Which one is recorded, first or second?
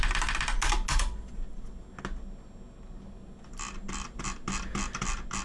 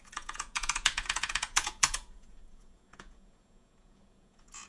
first